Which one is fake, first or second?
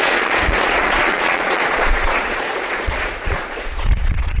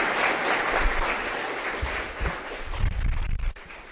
first